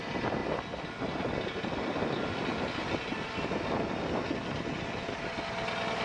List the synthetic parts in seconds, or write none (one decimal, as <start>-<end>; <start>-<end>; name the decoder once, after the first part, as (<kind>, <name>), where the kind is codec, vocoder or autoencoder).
none